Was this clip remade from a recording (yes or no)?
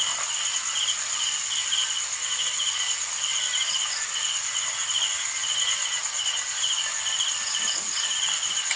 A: no